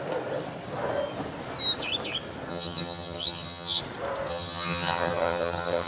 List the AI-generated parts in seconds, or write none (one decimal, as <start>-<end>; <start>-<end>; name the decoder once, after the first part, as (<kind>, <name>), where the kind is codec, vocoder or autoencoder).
2.5-3.8 (vocoder, HiFi-GAN); 4.3-5.9